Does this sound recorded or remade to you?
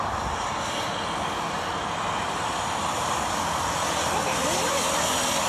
recorded